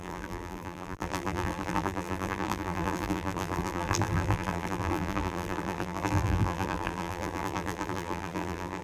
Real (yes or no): no